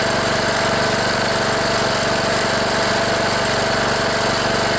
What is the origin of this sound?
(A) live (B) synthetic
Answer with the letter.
A